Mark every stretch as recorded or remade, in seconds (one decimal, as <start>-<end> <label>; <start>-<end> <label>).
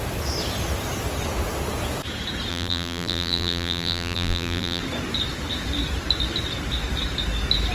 0.0-2.5 recorded; 2.5-4.8 remade; 4.8-7.7 recorded